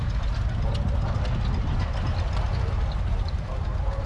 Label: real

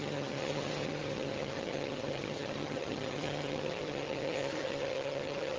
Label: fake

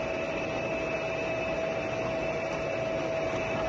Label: real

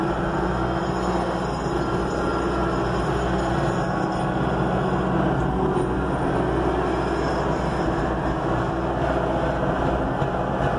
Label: real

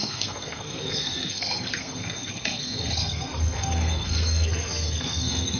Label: fake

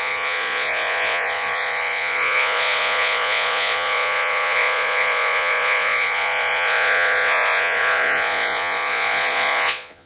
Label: fake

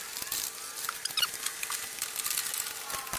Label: real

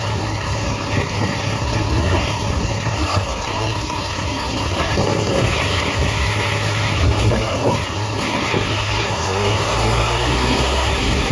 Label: fake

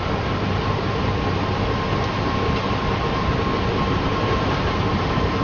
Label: fake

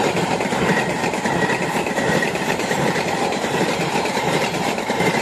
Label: fake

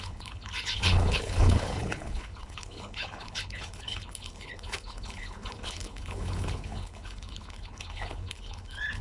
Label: fake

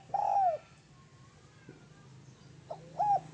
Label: real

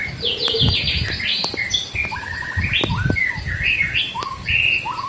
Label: real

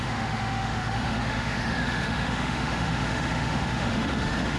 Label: fake